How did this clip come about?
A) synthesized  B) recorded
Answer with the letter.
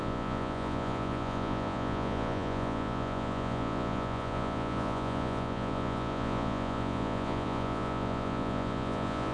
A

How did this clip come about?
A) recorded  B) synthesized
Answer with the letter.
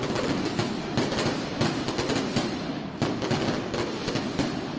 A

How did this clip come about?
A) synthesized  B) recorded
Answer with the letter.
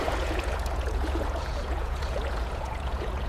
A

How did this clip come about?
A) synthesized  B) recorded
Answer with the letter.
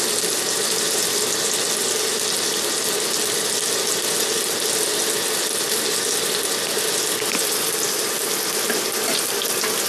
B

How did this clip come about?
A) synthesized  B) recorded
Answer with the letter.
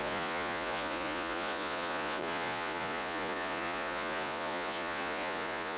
A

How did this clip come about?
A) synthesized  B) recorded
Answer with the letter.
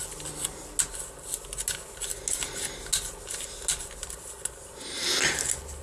B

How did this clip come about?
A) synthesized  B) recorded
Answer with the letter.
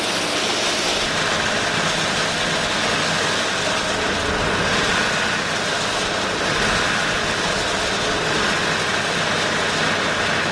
B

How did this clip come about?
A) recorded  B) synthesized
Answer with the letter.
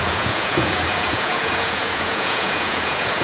B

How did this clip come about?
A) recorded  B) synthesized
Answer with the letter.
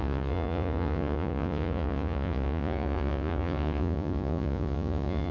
B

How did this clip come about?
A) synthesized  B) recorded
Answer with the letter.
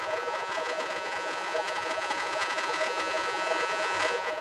A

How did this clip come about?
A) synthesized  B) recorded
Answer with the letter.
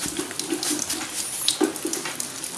B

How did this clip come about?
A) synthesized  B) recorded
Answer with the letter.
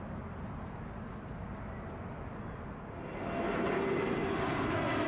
B